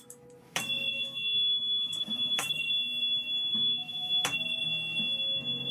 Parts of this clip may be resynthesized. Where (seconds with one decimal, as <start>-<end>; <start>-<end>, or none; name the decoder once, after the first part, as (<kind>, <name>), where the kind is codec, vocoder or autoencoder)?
0.9-2.7 (autoencoder, DAC-VAE); 3.5-4.1